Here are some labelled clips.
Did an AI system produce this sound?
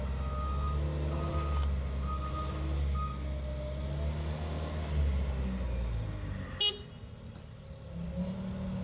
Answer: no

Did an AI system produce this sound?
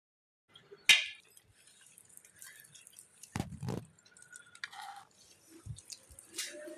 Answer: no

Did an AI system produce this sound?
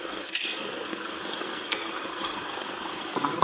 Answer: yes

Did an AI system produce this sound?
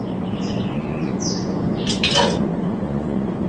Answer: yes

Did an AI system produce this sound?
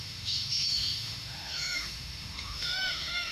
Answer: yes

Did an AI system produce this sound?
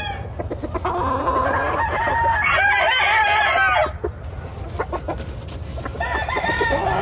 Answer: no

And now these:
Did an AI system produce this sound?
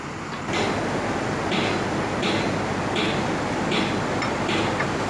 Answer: no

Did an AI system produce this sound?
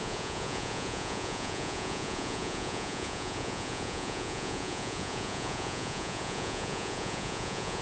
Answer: yes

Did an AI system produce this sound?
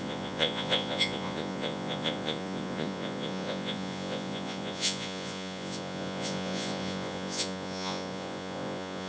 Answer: yes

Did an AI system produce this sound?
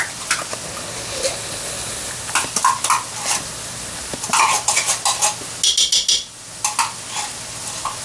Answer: no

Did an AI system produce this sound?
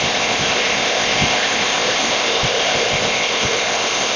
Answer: yes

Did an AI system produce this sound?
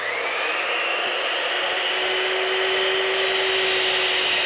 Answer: no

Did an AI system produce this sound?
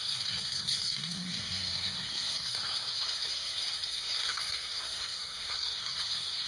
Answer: yes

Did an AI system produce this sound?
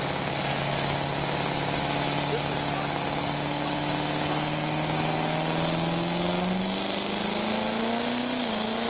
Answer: no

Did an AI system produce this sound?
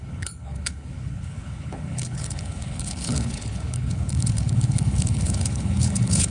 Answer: yes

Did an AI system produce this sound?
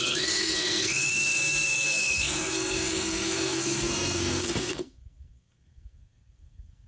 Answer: yes